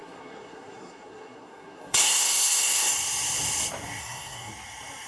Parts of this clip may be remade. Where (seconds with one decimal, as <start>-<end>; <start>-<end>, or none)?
0.0-2.9; 4.0-4.5